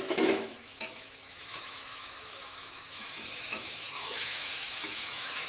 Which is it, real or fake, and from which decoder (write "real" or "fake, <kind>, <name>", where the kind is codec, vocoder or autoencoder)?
fake, autoencoder, DAC-VAE